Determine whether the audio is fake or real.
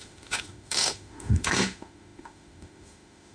fake